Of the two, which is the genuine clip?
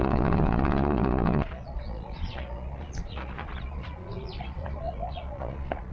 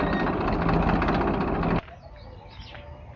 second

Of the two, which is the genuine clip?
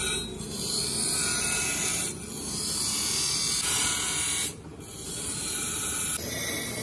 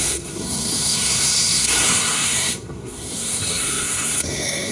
first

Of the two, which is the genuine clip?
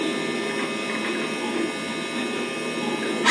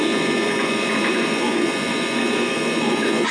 first